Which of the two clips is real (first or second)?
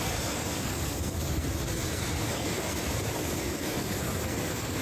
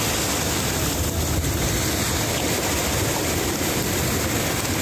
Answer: second